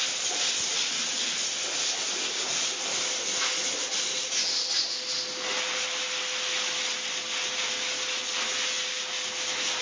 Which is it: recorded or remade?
recorded